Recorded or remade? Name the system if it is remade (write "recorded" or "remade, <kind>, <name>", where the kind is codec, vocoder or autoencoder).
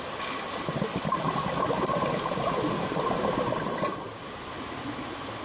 recorded